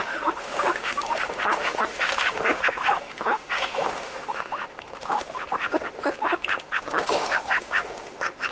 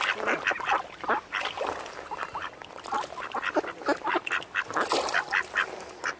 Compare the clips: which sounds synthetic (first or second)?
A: first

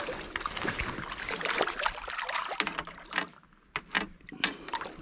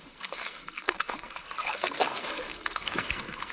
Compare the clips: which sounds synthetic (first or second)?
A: second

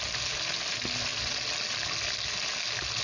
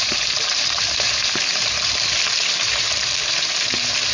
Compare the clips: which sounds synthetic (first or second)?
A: second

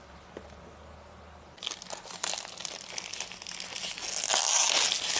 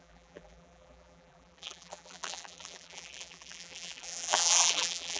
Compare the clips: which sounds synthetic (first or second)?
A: second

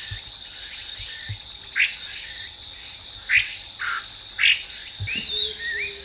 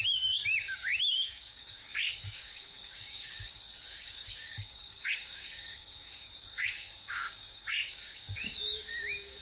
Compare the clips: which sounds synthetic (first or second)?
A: second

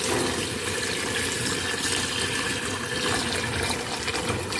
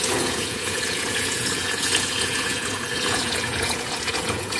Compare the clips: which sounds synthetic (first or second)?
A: second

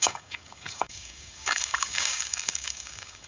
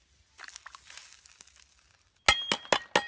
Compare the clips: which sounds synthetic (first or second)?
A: first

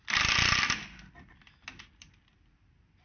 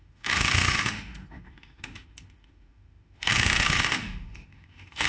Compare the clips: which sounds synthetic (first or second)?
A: second